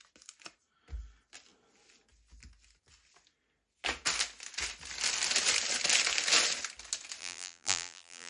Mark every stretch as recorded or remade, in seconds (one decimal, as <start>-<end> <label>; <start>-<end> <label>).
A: 0.0-7.2 recorded; 7.2-8.3 remade